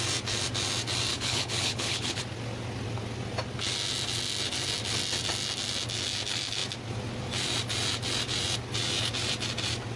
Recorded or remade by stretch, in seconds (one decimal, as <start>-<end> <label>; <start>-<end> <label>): 0.0-1.1 recorded; 1.1-2.2 remade; 2.2-10.0 recorded